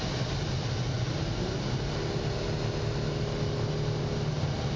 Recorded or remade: recorded